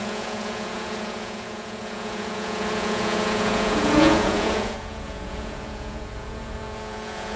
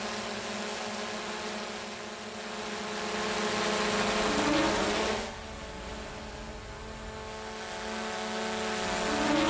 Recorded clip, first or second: second